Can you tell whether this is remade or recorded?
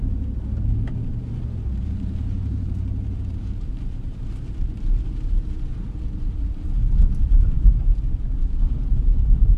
remade